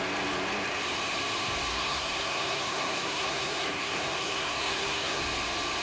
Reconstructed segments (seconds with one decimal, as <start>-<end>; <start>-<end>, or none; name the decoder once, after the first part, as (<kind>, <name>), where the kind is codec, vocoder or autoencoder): 1.7-5.2 (codec, SNAC)